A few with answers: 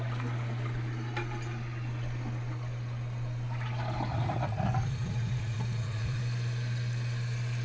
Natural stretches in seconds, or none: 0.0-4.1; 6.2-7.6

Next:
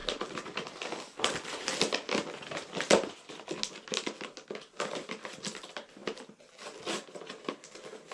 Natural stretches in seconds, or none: 0.0-8.1

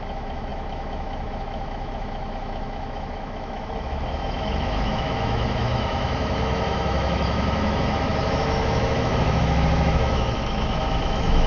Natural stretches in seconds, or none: none

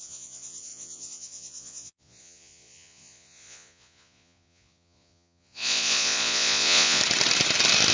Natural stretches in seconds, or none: 7.0-7.9

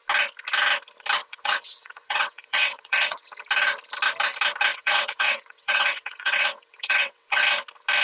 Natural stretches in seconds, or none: 0.0-1.2; 3.3-4.7; 7.4-8.0

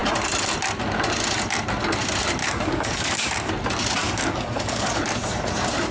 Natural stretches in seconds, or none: 0.0-2.4; 3.5-4.0; 5.0-5.9